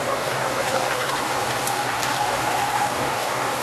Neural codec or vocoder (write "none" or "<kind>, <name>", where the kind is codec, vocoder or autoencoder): codec, DAC